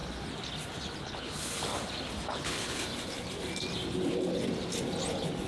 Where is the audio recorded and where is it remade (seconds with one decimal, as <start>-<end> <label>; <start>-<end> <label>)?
0.0-1.0 recorded; 1.0-1.7 remade; 1.7-2.3 recorded; 2.3-2.9 remade; 2.9-5.5 recorded